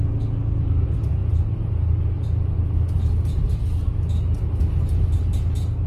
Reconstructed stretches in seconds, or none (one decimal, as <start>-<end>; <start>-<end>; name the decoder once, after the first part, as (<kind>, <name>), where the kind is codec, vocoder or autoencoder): none